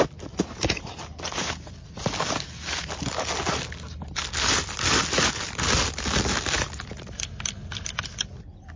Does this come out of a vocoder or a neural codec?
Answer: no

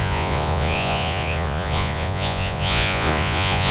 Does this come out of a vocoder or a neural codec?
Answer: yes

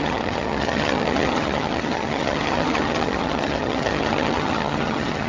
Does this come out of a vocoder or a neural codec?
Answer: yes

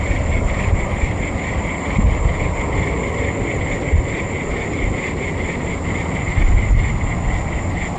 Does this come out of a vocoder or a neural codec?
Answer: no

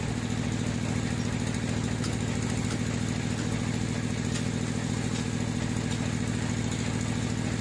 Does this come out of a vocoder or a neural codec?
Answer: no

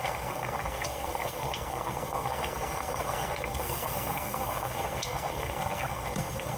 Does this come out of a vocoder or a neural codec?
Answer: yes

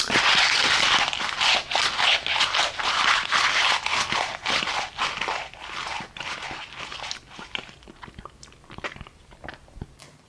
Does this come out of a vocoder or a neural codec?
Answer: no